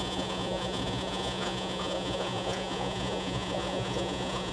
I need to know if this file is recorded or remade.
remade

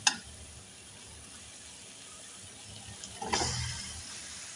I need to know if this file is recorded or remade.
recorded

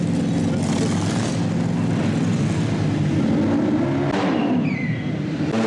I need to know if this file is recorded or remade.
recorded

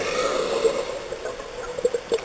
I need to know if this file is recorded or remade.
recorded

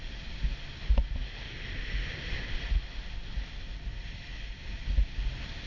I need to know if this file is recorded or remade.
recorded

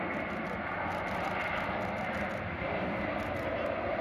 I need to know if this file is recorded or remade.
recorded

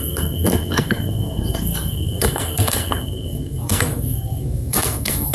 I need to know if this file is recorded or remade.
remade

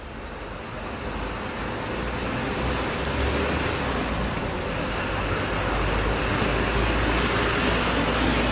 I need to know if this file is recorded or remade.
recorded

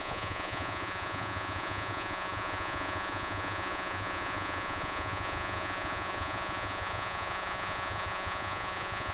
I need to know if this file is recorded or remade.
remade